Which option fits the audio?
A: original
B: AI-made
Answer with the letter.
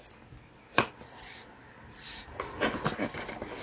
A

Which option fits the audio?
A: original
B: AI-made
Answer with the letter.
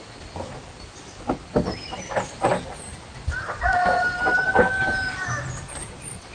A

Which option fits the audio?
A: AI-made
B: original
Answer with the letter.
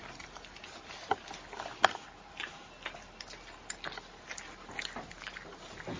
B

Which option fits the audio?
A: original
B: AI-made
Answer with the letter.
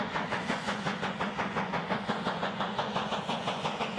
B